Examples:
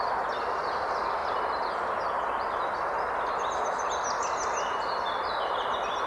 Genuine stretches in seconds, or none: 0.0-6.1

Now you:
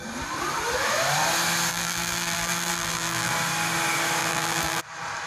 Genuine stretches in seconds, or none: 0.0-1.7; 3.3-4.2; 4.8-5.3

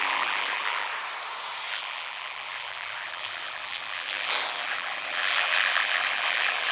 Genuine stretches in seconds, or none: 0.9-1.7

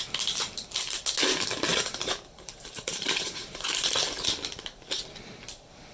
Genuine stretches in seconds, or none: 0.0-1.7; 3.9-5.9

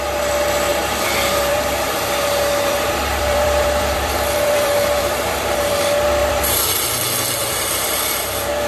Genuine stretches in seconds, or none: 0.0-0.7; 5.7-6.2; 6.7-7.4; 8.1-8.7

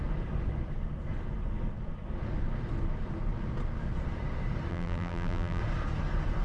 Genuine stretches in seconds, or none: 0.0-4.7; 5.6-6.4

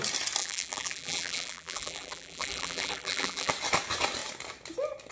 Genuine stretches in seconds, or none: 0.0-0.4; 3.5-5.1